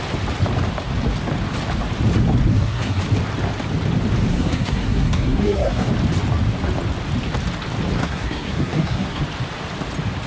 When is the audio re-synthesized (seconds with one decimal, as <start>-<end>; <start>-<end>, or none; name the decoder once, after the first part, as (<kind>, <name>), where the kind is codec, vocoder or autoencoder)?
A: 2.5-3.0 (codec, SNAC); 4.3-5.9; 8.0-9.2